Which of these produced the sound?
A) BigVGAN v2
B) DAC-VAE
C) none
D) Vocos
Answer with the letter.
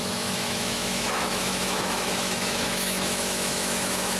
B